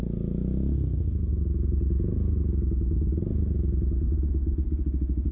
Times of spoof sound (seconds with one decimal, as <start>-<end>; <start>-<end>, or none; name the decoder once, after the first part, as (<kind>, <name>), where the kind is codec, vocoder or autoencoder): none